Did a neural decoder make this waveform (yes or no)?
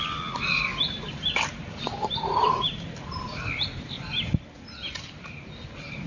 yes